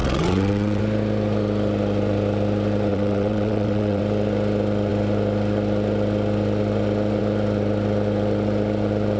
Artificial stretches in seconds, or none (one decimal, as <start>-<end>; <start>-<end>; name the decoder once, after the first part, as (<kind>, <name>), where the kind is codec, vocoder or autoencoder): 0.0-0.8 (vocoder, WaveNeXt); 2.9-4.0